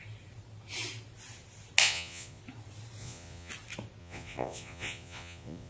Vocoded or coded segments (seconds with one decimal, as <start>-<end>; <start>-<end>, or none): 1.8-2.4; 3.0-3.5; 4.0-5.7